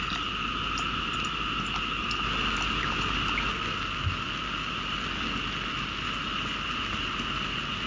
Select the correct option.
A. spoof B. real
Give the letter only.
B